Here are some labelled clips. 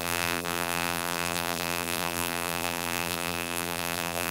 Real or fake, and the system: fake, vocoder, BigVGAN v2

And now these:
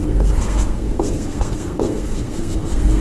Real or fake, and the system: fake, codec, SNAC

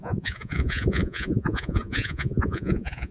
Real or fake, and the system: fake, vocoder, Vocos